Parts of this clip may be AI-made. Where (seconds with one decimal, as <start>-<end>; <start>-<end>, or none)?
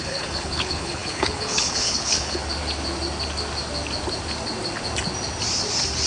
0.0-2.4